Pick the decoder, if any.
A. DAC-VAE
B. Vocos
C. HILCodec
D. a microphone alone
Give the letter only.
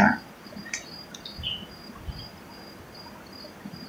D